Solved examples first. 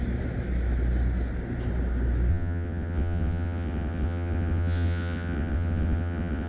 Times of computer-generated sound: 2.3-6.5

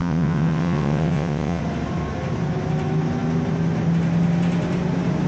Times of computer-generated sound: 0.0-1.6

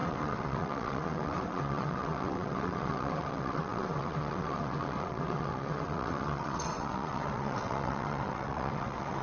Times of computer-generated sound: 0.0-9.2

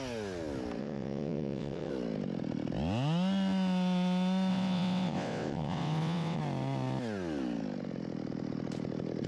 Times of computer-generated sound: 0.8-1.9; 4.5-6.4

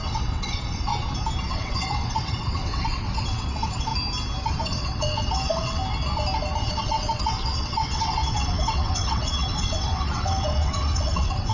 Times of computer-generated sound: 0.0-0.9; 1.5-3.9; 4.5-5.8; 6.6-11.5

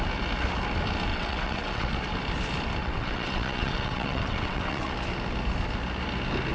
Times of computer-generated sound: 1.1-2.0; 2.8-4.9

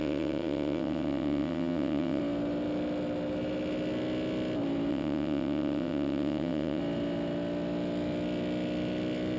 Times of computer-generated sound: 0.0-2.2; 4.9-6.8

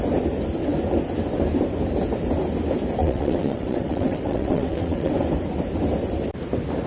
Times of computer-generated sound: 3.0-5.1